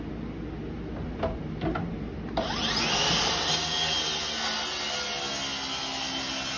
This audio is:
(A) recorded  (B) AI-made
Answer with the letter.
A